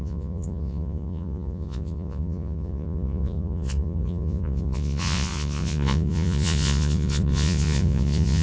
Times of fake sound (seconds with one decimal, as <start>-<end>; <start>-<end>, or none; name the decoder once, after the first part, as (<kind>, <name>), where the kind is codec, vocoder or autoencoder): 0.0-8.4 (vocoder, Vocos)